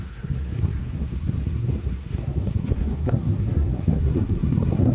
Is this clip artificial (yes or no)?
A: yes